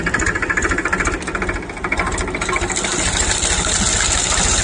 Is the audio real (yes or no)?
yes